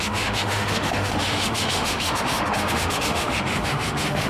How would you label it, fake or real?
fake